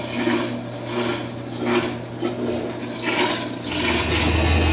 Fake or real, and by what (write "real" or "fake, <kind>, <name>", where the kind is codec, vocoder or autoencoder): real